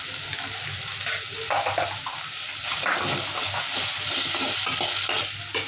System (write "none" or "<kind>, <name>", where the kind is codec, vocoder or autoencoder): none